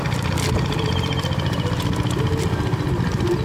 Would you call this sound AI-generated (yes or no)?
no